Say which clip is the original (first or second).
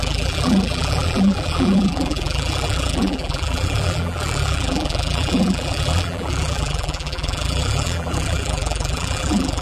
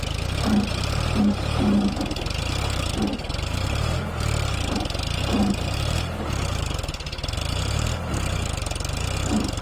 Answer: second